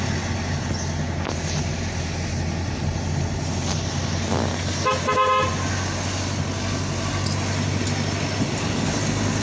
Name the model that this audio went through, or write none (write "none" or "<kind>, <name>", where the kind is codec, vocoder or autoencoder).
none